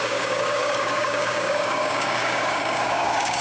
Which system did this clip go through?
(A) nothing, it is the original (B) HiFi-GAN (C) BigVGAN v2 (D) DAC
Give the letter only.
D